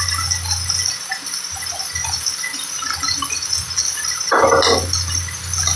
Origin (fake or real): real